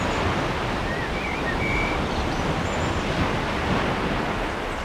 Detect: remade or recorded recorded